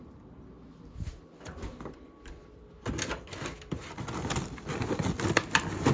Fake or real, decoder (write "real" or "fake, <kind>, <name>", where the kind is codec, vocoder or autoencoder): real